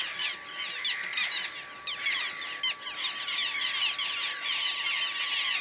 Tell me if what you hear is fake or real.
real